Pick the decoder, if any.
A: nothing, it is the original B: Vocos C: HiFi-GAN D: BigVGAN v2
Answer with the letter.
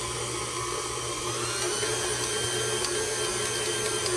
A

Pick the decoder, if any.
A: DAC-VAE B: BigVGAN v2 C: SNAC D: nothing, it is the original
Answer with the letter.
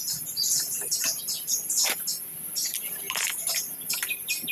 D